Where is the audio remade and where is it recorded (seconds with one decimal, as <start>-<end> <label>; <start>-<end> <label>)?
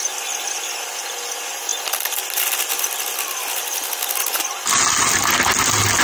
0.0-6.0 recorded